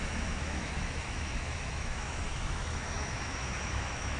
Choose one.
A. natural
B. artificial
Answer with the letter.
B